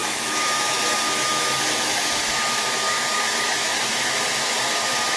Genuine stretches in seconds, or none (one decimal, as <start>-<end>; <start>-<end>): none